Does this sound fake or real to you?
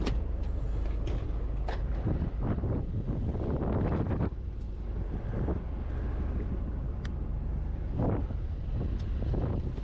real